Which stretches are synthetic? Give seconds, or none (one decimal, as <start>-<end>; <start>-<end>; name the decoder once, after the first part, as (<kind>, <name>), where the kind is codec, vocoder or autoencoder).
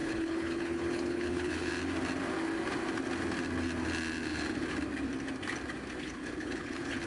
0.0-1.7 (codec, HILCodec); 6.0-7.1